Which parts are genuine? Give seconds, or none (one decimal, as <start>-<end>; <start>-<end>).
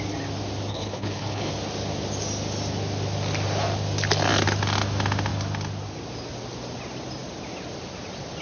0.0-0.7; 1.5-8.4